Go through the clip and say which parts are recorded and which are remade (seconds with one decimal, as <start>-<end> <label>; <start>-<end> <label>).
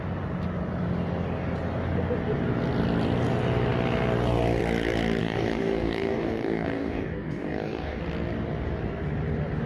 0.0-5.2 recorded; 5.2-8.0 remade; 8.0-9.7 recorded